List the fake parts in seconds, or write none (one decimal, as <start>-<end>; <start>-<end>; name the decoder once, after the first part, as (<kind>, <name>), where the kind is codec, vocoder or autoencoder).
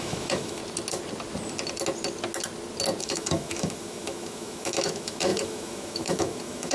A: 0.0-0.6 (autoencoder, DAC-VAE); 3.0-6.7